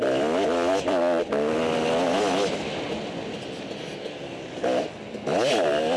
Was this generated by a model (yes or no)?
no